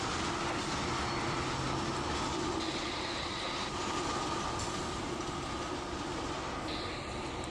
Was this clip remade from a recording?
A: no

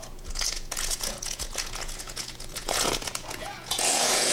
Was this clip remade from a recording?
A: yes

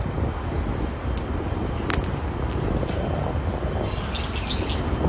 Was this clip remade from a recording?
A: no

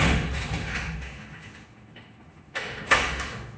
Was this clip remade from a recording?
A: yes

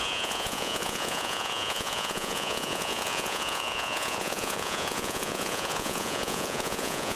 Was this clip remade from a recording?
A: yes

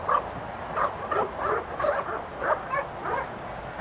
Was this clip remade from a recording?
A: no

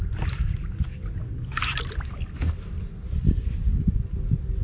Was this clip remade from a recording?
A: no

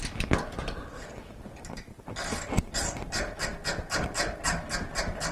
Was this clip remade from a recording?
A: no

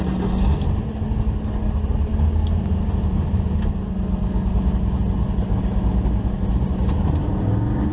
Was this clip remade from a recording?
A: no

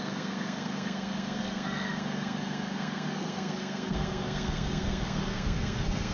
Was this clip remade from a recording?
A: yes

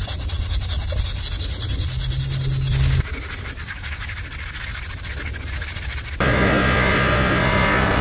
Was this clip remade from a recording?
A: no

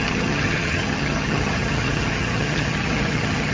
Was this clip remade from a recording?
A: yes